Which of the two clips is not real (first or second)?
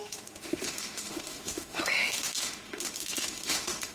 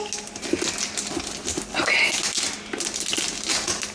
first